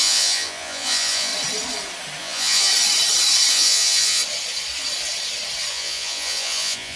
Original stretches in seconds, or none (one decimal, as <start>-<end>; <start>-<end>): 1.3-2.2; 2.7-3.5; 4.2-5.7